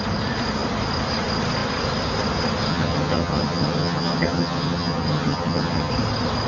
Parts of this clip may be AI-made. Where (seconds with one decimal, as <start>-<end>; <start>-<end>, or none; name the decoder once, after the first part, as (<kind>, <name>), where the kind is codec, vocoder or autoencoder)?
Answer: 2.7-5.9 (vocoder, HiFi-GAN)